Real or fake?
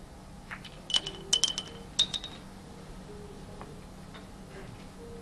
real